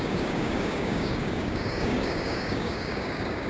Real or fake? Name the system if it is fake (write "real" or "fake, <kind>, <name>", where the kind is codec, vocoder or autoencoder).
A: fake, codec, DAC